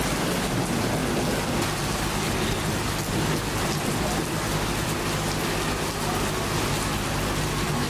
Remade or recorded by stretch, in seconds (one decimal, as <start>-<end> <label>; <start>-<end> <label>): 0.0-7.9 recorded